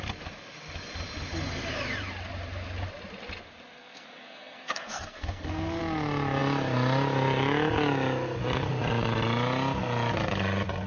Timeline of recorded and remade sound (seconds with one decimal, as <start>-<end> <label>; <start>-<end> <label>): 0.0-3.8 recorded; 3.8-5.8 remade; 5.8-10.9 recorded